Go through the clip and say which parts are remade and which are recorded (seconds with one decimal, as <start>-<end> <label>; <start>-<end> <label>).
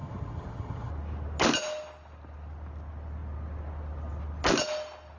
0.0-0.9 remade; 0.9-5.2 recorded